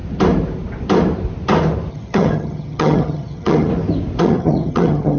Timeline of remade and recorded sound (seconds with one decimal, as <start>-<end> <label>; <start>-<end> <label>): 0.0-1.9 recorded; 1.9-3.7 remade; 3.7-4.2 recorded; 4.2-5.2 remade